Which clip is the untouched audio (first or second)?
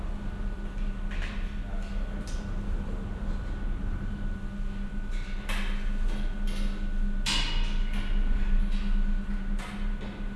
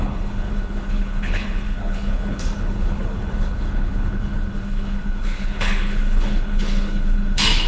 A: first